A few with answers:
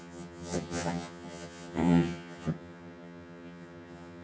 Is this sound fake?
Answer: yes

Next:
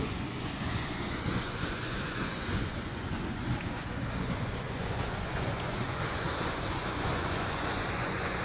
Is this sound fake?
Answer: yes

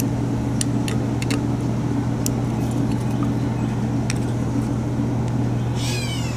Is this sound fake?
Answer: no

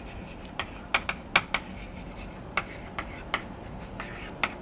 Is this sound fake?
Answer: no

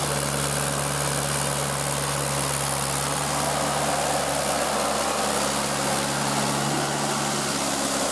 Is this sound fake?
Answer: no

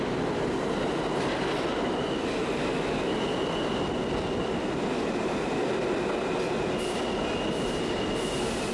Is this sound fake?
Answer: no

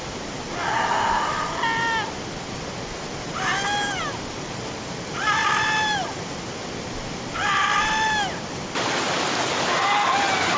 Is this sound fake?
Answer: no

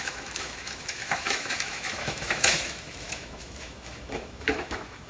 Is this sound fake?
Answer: yes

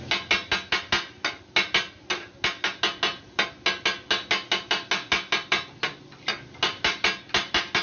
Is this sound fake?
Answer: no